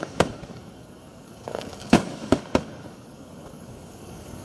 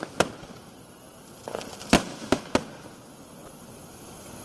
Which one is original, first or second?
second